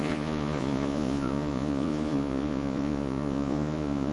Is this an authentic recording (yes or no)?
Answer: no